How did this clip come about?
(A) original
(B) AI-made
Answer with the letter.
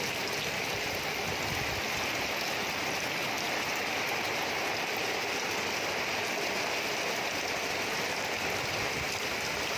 A